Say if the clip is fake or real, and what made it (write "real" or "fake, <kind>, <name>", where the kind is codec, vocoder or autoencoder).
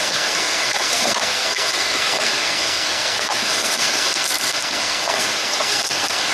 fake, codec, SNAC